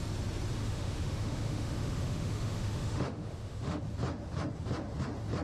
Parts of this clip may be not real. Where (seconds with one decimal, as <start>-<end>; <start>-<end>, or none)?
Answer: 0.6-3.8